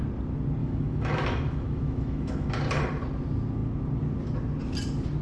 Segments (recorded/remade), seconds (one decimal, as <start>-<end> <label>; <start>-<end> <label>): 0.0-0.6 recorded; 0.6-2.5 remade; 2.5-5.2 recorded